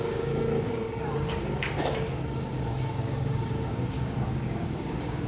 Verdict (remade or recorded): remade